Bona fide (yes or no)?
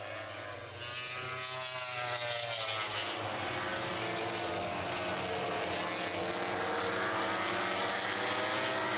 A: yes